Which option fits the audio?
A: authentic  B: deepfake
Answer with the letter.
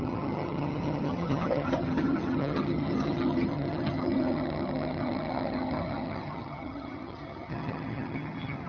B